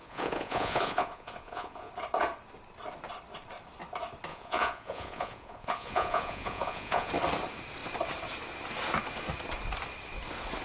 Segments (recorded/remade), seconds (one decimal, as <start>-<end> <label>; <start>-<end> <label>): 0.0-1.9 remade; 1.9-4.3 recorded; 4.3-7.1 remade; 7.1-10.6 recorded